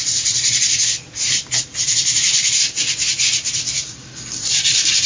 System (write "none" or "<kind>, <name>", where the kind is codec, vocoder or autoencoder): vocoder, BigVGAN v2